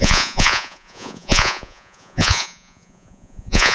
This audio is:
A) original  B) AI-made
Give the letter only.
B